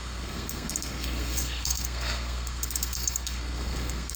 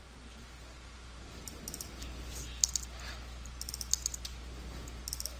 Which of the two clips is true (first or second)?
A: second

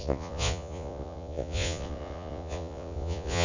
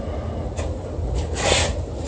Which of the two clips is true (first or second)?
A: second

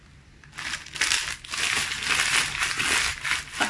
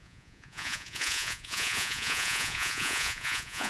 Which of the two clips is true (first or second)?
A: first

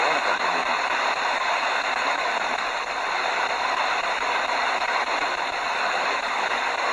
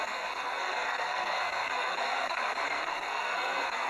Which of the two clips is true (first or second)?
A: first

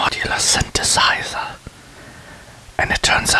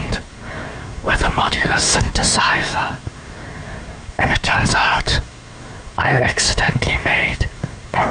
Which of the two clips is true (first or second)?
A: first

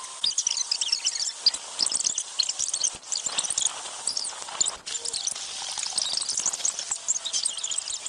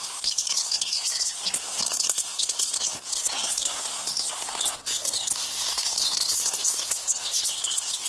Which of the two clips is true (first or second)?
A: first